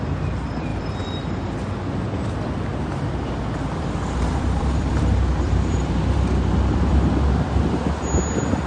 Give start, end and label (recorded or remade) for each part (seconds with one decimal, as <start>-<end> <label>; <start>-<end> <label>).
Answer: 0.0-0.7 recorded; 0.7-1.3 remade; 1.3-2.9 recorded; 2.9-7.1 remade; 7.1-8.7 recorded